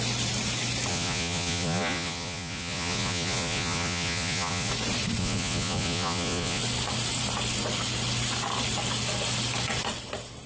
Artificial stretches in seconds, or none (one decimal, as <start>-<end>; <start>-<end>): 0.9-4.7; 5.2-6.6